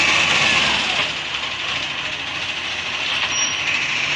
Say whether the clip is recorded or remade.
recorded